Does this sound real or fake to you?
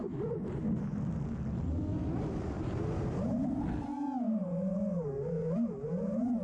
real